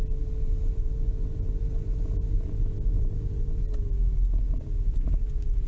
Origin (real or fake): real